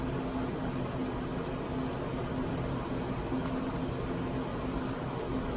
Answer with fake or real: real